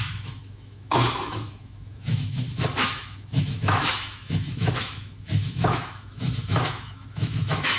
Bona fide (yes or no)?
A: no